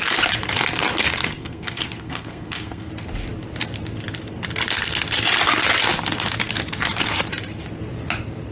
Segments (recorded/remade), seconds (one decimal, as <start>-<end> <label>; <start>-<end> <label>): 0.0-1.3 recorded; 1.3-2.9 remade; 2.9-8.5 recorded